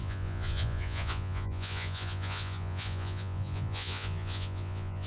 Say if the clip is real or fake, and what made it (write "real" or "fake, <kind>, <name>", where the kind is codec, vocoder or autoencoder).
fake, vocoder, Vocos